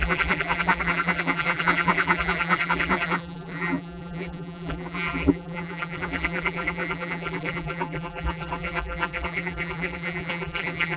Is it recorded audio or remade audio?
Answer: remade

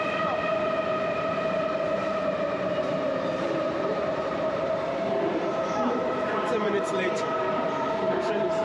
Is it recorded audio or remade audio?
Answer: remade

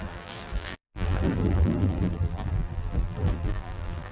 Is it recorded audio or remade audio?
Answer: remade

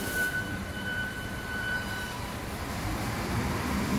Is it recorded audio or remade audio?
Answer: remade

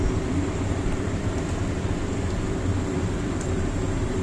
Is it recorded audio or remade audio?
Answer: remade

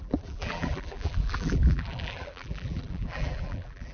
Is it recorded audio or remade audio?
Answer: remade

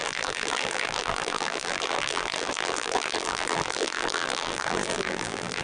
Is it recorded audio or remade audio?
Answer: remade